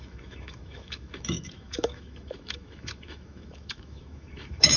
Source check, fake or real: fake